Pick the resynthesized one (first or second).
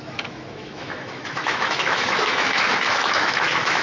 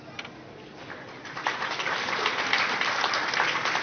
first